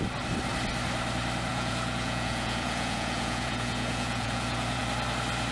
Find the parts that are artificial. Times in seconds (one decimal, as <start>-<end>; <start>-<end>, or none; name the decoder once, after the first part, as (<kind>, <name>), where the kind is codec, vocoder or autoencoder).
1.5-4.8 (vocoder, Vocos)